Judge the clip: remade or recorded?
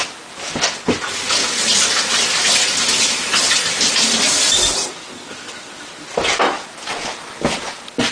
recorded